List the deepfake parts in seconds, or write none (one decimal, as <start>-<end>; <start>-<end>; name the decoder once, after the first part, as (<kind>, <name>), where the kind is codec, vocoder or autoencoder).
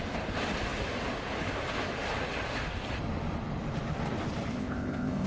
4.5-5.3 (codec, ZipCodec)